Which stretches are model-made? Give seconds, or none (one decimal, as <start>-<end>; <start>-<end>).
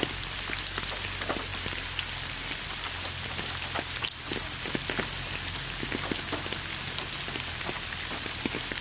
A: none